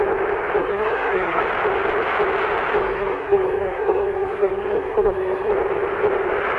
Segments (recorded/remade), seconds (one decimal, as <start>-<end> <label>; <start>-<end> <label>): 0.0-0.6 recorded; 0.6-1.4 remade; 1.4-2.8 recorded; 2.8-5.5 remade; 5.5-6.6 recorded